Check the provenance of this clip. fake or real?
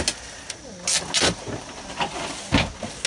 real